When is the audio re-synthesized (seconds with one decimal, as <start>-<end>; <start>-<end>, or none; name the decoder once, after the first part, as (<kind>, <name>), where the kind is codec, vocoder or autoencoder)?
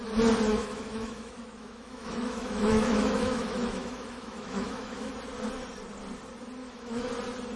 0.5-5.1 (autoencoder, DAC-VAE); 6.6-7.1